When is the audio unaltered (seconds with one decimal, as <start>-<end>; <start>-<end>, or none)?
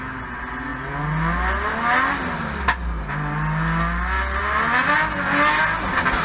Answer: 0.0-6.2